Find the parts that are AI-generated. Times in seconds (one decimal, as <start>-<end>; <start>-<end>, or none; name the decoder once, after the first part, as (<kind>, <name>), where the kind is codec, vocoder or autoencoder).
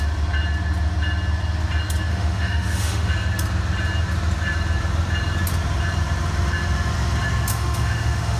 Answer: 2.1-3.1 (autoencoder, DAC-VAE); 7.5-8.4